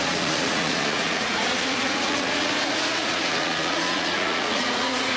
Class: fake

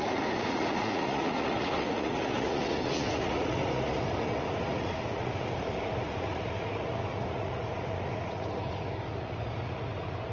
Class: fake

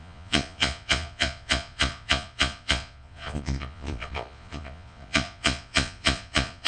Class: fake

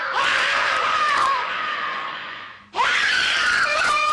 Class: fake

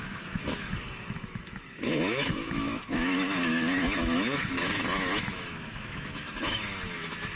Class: fake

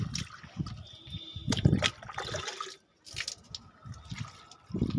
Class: real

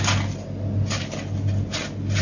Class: real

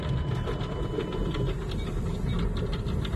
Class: real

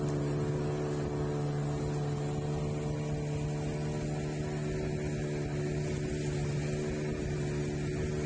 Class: real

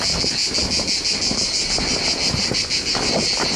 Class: real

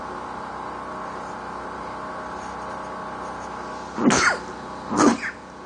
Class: real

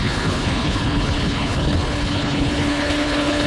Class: fake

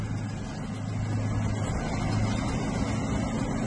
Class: real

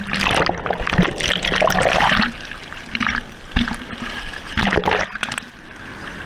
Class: real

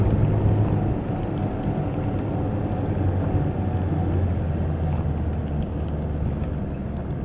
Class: real